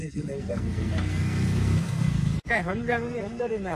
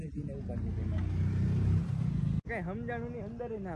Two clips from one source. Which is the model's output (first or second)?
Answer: first